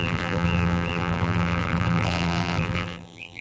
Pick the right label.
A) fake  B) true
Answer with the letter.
A